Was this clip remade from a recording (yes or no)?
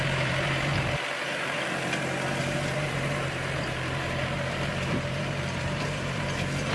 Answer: yes